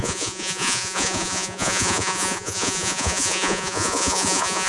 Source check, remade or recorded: remade